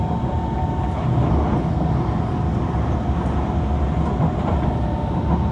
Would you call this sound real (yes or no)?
yes